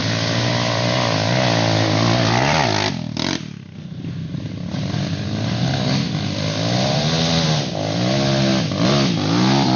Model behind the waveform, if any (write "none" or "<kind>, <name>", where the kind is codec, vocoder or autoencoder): none